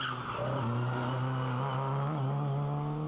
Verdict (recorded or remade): recorded